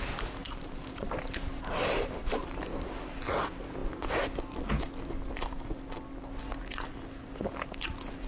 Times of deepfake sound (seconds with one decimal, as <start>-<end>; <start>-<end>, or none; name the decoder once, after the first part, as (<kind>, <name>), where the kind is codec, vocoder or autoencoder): 0.4-2.4 (vocoder, BigVGAN v2)